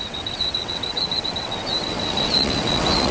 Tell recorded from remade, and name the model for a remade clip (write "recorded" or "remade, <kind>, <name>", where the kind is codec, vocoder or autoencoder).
remade, vocoder, WaveNeXt